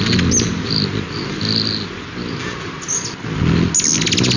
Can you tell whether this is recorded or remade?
recorded